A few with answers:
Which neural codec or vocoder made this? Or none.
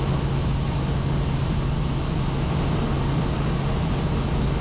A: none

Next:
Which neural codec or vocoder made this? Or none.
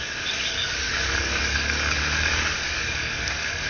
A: codec, DAC